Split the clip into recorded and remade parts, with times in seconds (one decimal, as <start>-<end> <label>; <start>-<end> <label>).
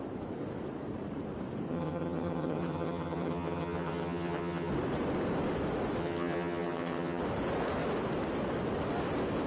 0.0-1.7 recorded; 1.7-4.7 remade; 4.7-6.0 recorded; 6.0-7.2 remade; 7.2-9.5 recorded